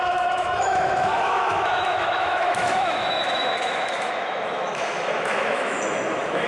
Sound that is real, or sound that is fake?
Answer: fake